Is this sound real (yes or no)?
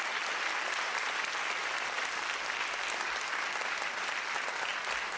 yes